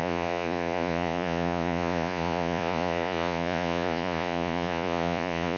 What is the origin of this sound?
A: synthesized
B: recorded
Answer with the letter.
A